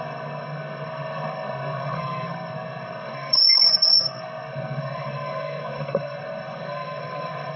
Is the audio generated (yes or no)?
yes